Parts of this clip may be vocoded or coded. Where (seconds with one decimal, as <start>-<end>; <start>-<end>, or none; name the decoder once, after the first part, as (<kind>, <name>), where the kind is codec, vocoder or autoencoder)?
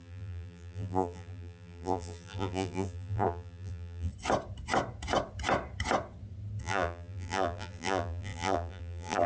0.0-4.1 (vocoder, BigVGAN v2); 6.6-9.3